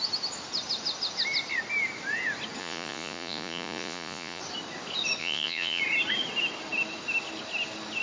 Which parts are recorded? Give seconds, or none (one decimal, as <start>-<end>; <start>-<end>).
0.0-2.6; 4.4-5.2; 5.8-8.0